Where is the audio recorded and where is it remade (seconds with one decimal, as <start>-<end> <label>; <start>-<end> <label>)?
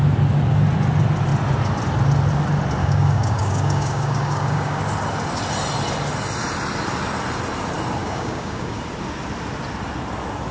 0.0-2.8 recorded; 2.8-4.8 remade; 4.8-8.0 recorded; 8.0-8.8 remade; 8.8-10.5 recorded